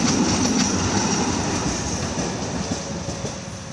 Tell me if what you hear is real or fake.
real